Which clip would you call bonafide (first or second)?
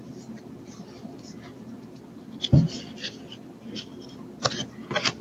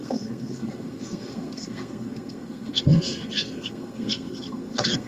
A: first